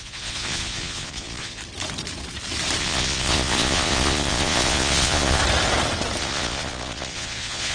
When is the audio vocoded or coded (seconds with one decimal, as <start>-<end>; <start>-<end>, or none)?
0.0-1.6; 2.8-5.4; 6.2-7.7